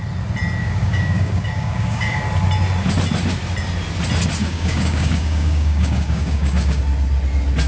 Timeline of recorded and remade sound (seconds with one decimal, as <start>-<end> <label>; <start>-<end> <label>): 0.0-0.6 recorded; 0.6-2.2 remade; 2.2-4.4 recorded; 4.4-6.8 remade; 6.8-7.7 recorded